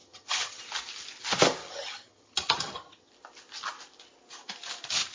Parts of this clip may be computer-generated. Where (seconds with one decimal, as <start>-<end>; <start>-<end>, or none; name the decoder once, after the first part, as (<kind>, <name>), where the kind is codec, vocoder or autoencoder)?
0.0-0.6 (vocoder, HiFi-GAN); 1.6-3.1